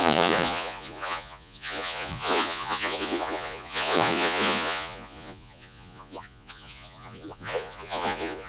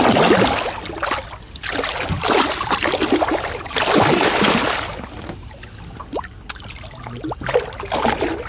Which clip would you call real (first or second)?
second